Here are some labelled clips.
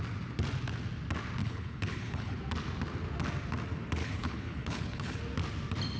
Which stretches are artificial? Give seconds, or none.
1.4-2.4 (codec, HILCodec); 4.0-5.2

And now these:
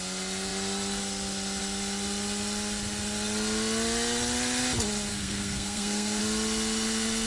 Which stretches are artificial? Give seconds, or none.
5.1-6.2 (codec, SNAC)

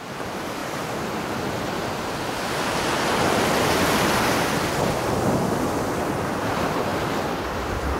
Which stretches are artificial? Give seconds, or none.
none

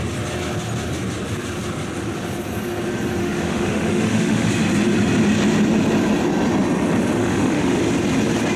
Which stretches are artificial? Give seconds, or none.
3.2-4.5 (autoencoder, DAC-VAE); 7.2-7.8

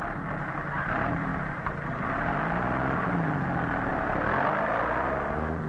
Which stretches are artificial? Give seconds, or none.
none

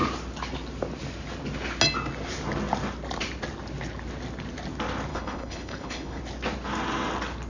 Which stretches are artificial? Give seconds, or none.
5.1-6.2 (codec, HILCodec)

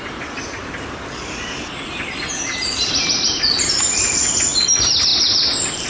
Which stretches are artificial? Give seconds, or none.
none

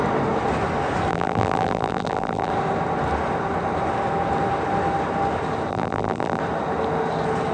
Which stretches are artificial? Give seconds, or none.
1.1-2.5 (vocoder, BigVGAN v2); 5.7-6.4